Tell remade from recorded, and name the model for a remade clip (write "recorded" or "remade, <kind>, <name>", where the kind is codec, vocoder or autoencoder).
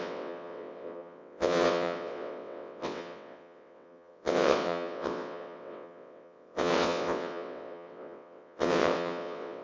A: remade, vocoder, WaveNeXt